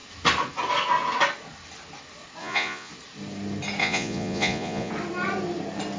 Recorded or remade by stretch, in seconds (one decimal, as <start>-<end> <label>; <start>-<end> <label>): 0.0-2.4 recorded; 2.4-2.9 remade; 2.9-3.8 recorded; 3.8-4.9 remade; 4.9-6.0 recorded

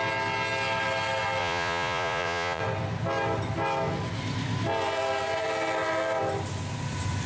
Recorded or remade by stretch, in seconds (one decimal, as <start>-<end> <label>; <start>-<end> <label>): 0.0-1.4 recorded; 1.4-2.6 remade; 2.6-7.3 recorded

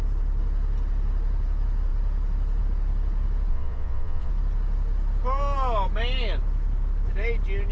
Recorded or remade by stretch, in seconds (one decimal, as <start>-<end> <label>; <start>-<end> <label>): 0.0-3.5 recorded; 3.5-4.3 remade; 4.3-7.7 recorded

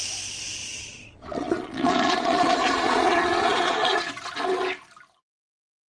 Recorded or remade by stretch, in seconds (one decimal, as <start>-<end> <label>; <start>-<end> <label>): 0.0-0.6 recorded; 0.6-4.1 remade; 4.1-5.9 recorded

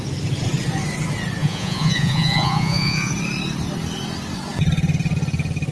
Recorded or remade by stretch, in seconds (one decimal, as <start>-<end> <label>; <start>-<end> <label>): 0.0-1.4 recorded; 1.4-3.1 remade; 3.1-5.7 recorded